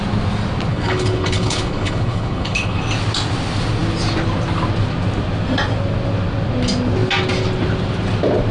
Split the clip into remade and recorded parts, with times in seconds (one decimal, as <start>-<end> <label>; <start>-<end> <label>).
0.0-0.7 recorded; 0.7-2.8 remade; 2.8-8.5 recorded